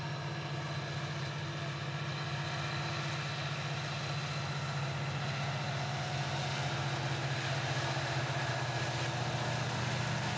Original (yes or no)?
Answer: yes